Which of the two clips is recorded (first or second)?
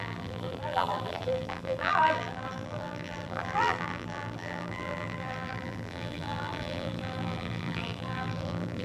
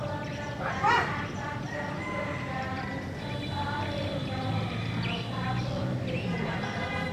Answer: second